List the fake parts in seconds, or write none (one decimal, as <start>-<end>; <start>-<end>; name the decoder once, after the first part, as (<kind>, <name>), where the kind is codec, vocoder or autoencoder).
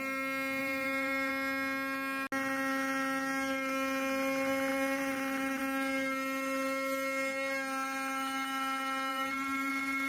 0.6-1.3 (vocoder, BigVGAN v2); 4.7-5.6; 9.1-9.7